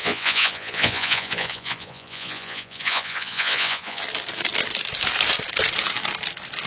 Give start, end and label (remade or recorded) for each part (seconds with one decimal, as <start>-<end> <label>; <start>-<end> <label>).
0.0-4.0 remade; 4.0-6.7 recorded